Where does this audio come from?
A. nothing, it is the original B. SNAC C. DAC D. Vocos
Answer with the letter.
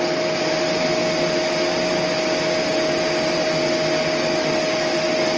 A